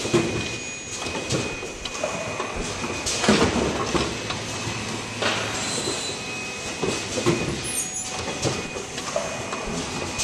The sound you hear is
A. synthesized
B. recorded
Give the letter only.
B